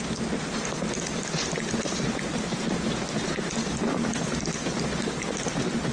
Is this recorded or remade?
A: recorded